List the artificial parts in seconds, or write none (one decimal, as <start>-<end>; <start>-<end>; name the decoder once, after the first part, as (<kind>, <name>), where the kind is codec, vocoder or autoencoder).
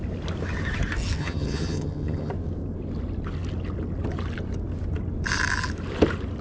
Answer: 1.2-2.3 (vocoder, HiFi-GAN)